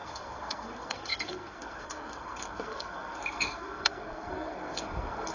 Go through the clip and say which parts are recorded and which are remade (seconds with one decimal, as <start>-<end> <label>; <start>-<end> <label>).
0.0-5.3 remade